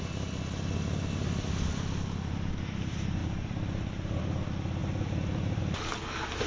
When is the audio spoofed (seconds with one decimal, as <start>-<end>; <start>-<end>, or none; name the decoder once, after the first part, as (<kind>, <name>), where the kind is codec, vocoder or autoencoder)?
3.2-4.2 (vocoder, BigVGAN v2); 4.8-5.6